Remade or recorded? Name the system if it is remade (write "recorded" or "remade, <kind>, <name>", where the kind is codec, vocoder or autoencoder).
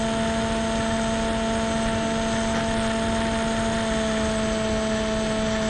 recorded